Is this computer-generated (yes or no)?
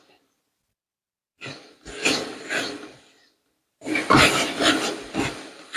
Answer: no